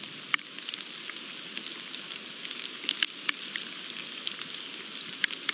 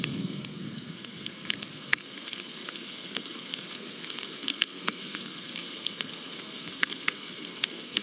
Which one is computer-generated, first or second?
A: second